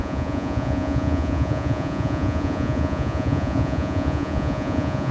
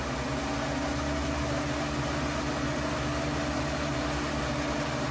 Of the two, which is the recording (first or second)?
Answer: second